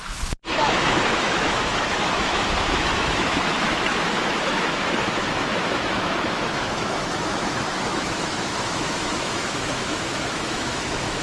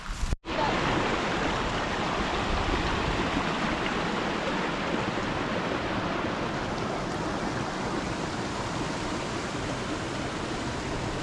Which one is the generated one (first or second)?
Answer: first